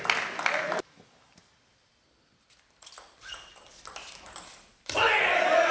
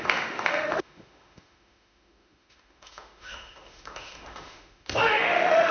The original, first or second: first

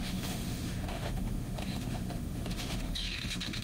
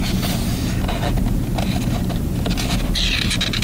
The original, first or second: second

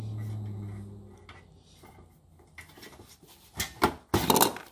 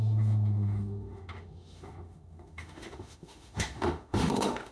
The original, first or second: first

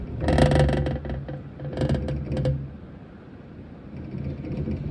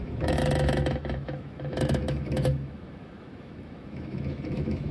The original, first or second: first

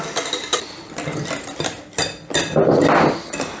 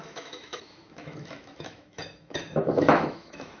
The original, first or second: first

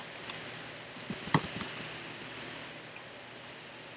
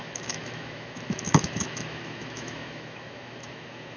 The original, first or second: first